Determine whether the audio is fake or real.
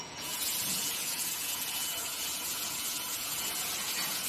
fake